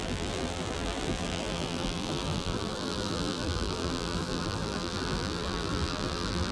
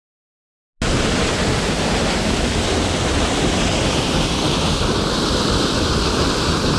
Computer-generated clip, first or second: first